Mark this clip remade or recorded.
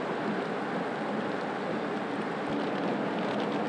recorded